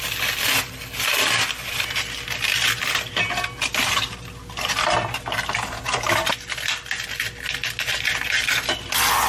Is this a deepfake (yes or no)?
no